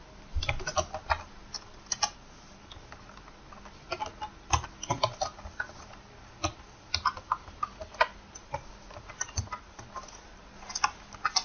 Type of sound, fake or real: real